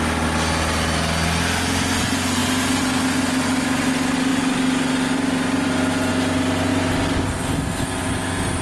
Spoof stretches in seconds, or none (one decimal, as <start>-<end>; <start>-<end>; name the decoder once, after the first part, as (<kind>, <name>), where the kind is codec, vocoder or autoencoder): none